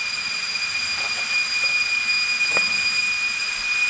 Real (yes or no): yes